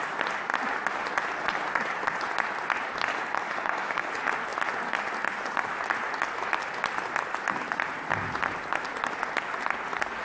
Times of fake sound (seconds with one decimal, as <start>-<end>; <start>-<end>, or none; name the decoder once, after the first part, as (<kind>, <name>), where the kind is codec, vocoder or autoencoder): 3.1-4.1 (codec, DAC)